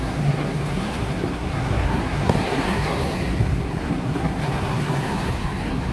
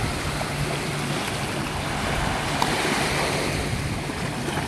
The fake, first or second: first